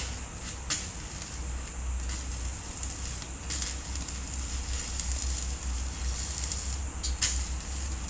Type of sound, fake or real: real